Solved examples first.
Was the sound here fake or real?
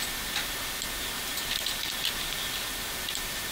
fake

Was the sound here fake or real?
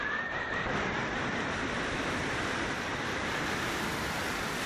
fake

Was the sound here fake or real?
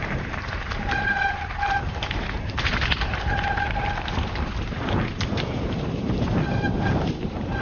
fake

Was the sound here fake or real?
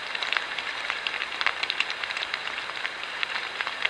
fake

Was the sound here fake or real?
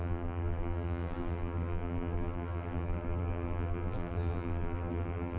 fake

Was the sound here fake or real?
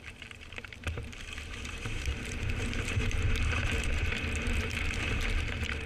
fake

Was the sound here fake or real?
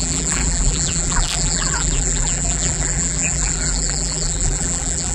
fake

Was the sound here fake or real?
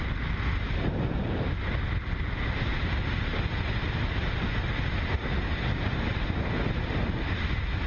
real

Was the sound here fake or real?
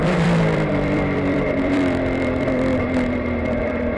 fake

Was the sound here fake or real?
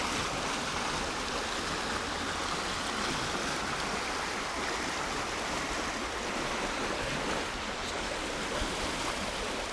real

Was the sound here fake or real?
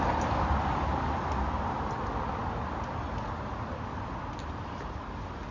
real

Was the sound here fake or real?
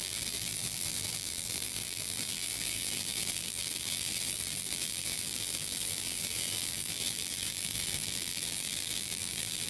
fake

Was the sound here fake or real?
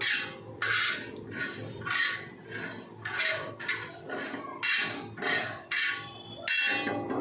real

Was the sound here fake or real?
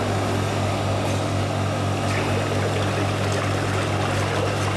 real